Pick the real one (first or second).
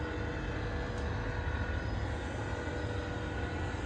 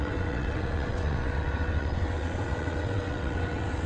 first